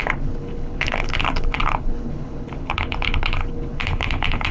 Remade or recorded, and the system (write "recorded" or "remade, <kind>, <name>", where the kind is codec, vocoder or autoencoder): remade, codec, HILCodec